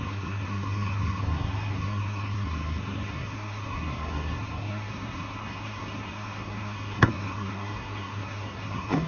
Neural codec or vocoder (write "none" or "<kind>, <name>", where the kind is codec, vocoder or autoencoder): codec, SNAC